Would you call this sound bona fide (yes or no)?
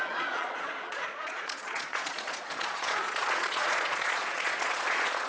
no